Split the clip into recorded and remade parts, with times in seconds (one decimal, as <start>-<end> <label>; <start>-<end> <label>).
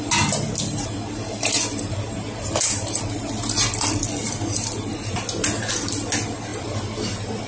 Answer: 0.0-7.5 recorded